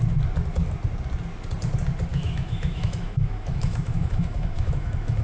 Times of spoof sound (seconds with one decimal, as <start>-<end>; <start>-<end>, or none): 2.1-5.2